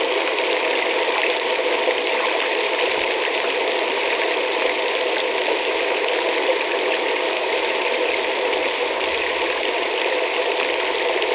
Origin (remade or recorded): recorded